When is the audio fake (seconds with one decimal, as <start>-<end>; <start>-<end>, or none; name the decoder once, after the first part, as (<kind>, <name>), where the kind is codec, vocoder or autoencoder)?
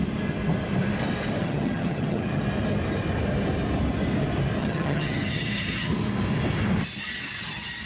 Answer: 1.4-2.4 (vocoder, HiFi-GAN); 4.6-5.9